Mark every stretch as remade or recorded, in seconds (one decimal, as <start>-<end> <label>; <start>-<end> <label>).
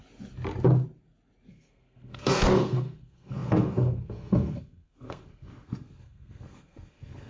0.0-1.5 recorded; 1.5-7.3 remade